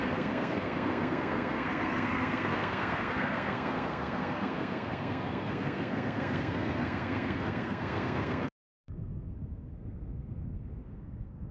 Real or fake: fake